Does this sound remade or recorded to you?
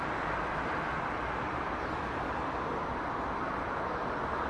recorded